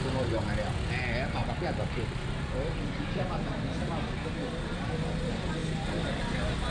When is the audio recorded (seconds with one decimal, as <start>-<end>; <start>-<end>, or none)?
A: 0.0-1.4; 4.3-5.6; 6.2-6.7